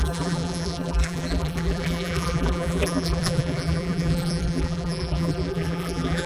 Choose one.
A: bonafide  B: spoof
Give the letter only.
B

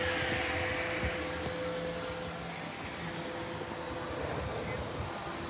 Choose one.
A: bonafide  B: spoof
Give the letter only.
A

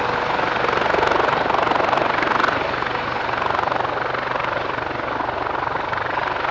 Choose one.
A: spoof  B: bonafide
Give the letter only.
B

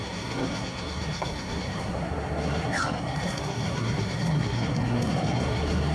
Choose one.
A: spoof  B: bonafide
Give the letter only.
A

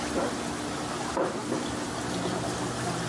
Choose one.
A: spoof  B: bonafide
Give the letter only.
B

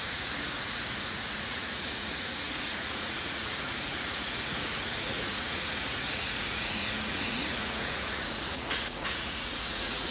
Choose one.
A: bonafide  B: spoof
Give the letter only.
B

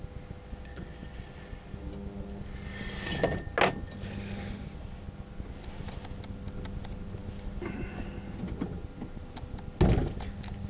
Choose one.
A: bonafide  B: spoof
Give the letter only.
A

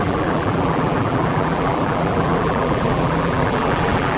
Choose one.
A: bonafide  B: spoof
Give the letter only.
B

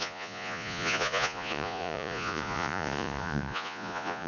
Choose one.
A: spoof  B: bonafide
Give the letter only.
A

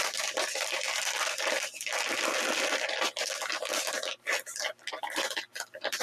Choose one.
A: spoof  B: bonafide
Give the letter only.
B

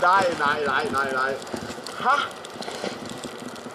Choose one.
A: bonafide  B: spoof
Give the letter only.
A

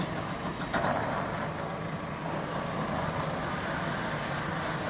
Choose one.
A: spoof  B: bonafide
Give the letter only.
B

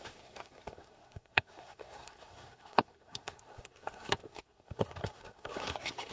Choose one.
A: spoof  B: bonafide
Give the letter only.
A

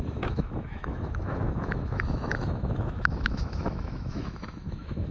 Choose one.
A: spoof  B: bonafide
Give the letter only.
A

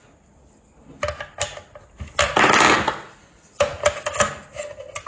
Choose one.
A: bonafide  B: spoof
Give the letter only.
A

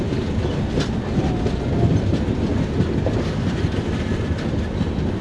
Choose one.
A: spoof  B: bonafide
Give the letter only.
B